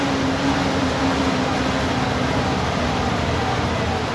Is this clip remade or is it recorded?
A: recorded